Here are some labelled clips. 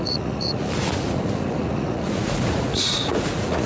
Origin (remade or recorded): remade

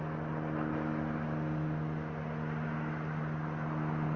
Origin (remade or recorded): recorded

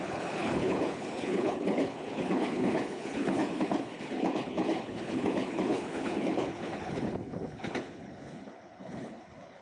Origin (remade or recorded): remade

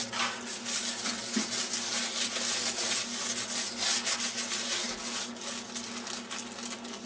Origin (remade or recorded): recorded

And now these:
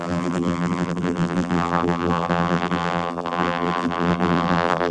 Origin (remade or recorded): remade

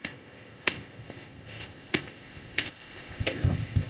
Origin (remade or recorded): remade